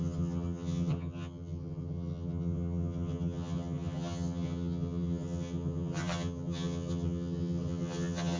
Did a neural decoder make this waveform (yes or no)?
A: yes